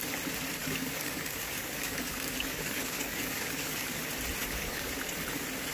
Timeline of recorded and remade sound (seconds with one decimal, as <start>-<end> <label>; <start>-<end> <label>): 0.0-0.6 recorded; 0.6-4.0 remade; 4.0-4.4 recorded; 4.4-4.9 remade; 4.9-5.7 recorded